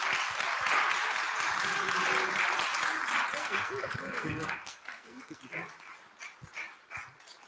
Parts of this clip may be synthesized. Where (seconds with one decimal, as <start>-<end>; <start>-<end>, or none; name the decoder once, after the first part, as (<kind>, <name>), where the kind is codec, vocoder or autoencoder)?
3.4-5.4 (codec, SNAC)